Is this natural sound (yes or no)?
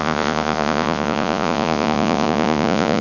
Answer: no